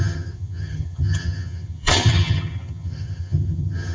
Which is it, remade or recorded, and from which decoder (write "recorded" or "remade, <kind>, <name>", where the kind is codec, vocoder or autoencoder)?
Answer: remade, vocoder, HiFi-GAN